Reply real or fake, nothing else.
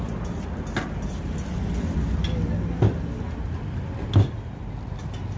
real